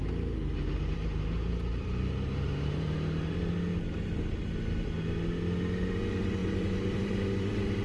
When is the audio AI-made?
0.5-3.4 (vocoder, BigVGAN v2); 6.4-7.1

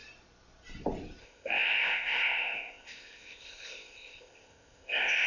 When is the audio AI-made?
1.2-5.3 (codec, ZipCodec)

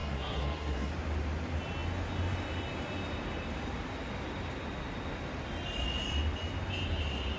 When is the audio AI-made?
0.0-0.9 (codec, SNAC)

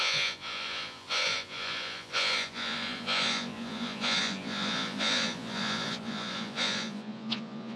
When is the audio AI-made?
0.0-7.8 (vocoder, Vocos)

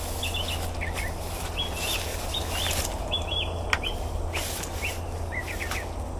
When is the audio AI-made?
none